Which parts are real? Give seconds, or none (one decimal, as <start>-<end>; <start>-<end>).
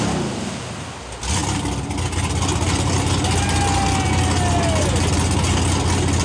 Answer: 0.0-6.2